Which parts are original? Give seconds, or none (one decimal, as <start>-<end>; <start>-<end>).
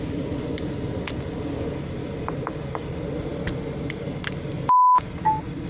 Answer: 0.0-5.7